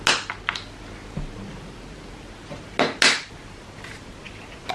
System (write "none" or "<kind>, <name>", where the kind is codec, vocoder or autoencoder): none